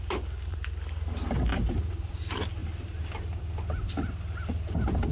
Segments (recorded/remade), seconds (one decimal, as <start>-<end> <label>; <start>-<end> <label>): 0.0-1.5 recorded; 1.5-2.2 remade; 2.2-5.1 recorded